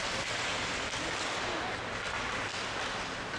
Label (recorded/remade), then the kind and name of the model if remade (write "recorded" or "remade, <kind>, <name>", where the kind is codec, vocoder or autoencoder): recorded